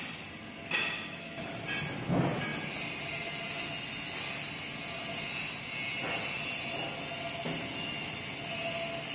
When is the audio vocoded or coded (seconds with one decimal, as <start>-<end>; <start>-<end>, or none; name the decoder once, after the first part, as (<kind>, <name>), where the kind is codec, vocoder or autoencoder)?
none